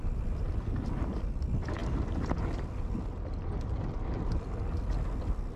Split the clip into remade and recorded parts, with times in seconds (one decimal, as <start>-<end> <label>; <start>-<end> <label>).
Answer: 0.0-5.6 recorded